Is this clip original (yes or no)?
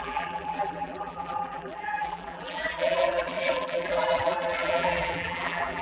no